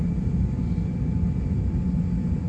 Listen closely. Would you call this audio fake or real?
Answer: real